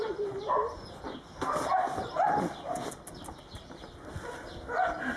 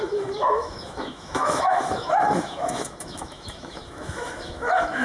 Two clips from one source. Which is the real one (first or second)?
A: first